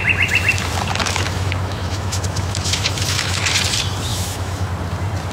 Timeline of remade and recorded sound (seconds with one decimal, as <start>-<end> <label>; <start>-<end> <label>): 0.0-1.0 recorded; 1.0-3.4 remade; 3.4-4.1 recorded; 4.1-4.7 remade; 4.7-5.3 recorded